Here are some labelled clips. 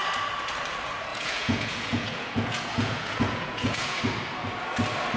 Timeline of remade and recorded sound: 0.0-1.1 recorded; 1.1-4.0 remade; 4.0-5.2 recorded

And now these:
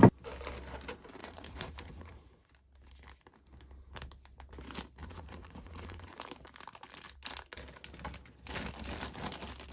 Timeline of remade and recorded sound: 0.0-1.2 recorded; 1.2-2.5 remade; 2.5-5.0 recorded; 5.0-6.2 remade; 6.2-9.7 recorded

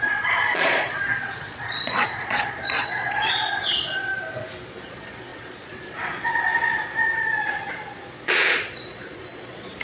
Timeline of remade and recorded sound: 0.0-4.1 remade; 4.1-4.8 recorded; 4.8-9.8 remade

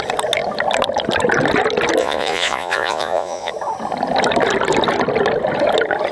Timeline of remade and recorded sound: 0.0-2.0 recorded; 2.0-3.5 remade; 3.5-6.1 recorded